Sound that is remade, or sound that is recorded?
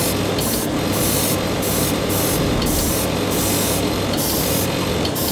recorded